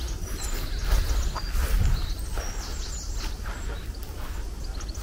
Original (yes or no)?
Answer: yes